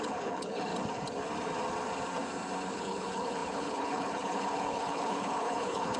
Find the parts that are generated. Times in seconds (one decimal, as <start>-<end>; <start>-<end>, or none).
0.0-0.7; 2.7-6.0